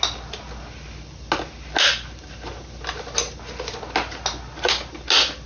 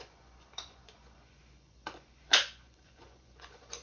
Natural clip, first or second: first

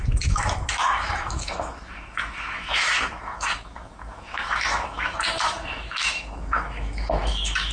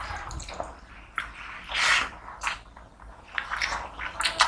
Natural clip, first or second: second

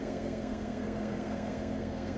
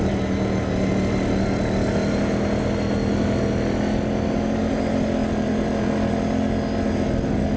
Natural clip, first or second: second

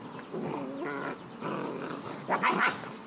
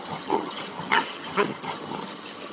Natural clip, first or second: first